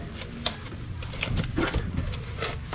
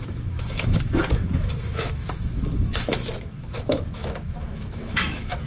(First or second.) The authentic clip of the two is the first